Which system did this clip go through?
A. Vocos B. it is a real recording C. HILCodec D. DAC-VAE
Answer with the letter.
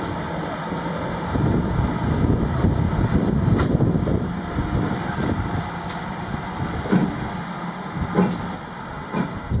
B